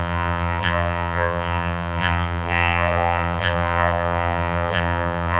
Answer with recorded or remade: remade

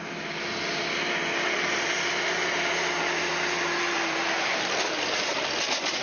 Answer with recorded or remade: recorded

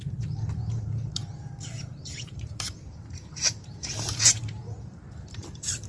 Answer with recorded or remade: remade